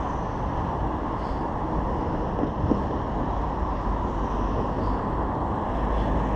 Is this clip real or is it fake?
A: real